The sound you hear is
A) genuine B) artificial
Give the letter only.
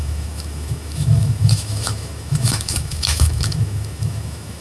B